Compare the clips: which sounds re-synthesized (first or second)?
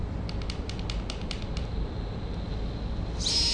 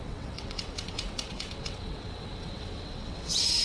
second